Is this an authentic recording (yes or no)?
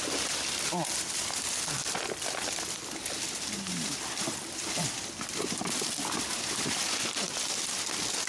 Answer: yes